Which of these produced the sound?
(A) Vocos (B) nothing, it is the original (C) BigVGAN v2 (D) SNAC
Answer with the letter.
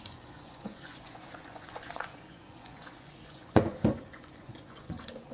A